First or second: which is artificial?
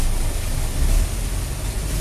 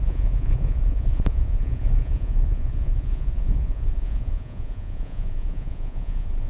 second